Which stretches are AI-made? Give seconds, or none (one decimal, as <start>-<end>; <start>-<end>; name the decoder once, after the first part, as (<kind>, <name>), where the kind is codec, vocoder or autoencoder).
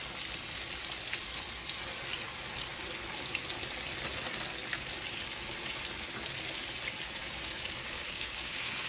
7.2-8.9 (codec, DAC)